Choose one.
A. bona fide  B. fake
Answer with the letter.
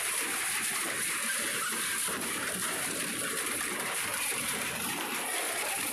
B